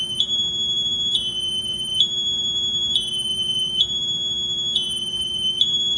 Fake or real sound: fake